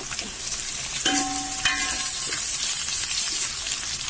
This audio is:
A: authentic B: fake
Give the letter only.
A